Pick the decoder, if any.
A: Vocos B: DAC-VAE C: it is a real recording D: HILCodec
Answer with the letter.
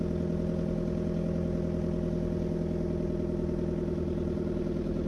C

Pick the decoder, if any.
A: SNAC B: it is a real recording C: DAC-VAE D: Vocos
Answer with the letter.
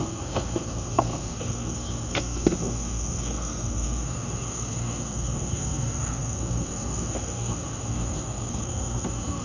A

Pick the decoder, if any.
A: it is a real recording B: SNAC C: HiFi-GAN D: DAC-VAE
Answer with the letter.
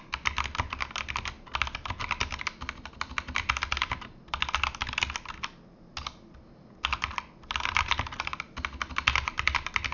A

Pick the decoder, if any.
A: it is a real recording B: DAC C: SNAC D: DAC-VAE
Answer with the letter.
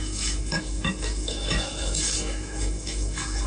D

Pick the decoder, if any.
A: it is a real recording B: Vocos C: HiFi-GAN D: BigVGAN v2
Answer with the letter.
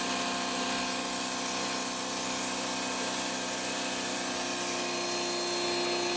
A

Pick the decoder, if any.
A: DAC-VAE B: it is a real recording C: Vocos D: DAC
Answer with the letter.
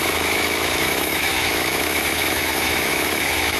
A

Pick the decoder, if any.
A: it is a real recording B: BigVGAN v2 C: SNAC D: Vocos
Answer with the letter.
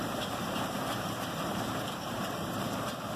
B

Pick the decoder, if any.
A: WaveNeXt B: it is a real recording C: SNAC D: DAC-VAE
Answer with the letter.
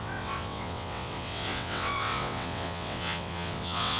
A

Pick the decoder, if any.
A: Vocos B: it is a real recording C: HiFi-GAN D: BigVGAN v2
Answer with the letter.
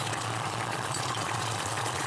A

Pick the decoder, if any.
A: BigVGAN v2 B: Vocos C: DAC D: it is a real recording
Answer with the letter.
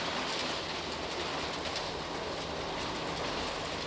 D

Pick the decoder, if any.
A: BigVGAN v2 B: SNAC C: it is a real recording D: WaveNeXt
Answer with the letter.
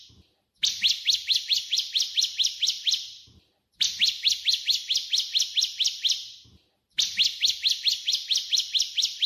C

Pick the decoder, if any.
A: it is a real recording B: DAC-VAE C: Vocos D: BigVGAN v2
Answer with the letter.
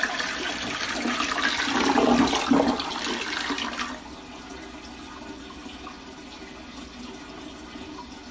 A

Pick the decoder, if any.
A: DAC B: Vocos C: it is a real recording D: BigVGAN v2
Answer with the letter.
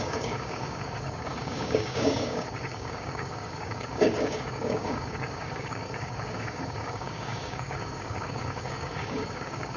A